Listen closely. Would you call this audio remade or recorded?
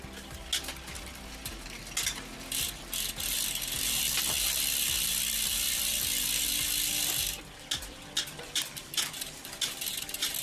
recorded